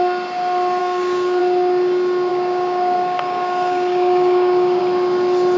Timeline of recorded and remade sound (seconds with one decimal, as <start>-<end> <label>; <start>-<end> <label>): 0.0-0.8 recorded; 0.8-1.4 remade; 1.4-2.3 recorded; 2.3-4.8 remade; 4.8-5.6 recorded